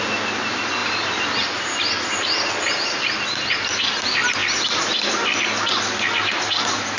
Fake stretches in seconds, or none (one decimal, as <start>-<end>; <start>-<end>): none